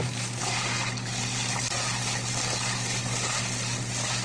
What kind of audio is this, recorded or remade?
recorded